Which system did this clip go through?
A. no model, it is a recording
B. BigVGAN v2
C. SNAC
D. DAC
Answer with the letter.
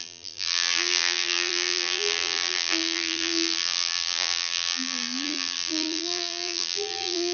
B